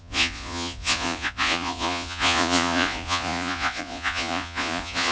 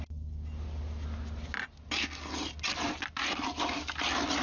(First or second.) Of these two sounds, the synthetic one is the first